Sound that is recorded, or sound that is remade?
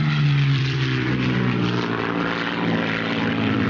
remade